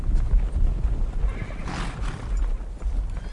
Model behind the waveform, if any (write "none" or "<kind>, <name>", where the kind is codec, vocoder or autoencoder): none